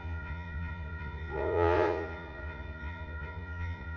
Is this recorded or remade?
remade